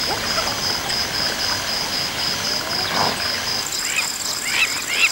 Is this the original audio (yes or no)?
yes